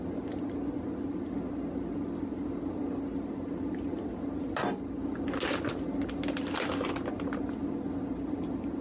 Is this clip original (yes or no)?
yes